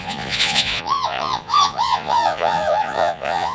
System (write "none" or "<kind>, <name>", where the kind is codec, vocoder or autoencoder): vocoder, Vocos